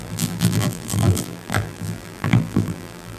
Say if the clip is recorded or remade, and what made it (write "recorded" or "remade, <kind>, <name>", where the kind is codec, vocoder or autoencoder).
remade, vocoder, BigVGAN v2